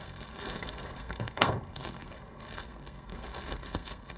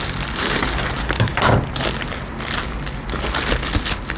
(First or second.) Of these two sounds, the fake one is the first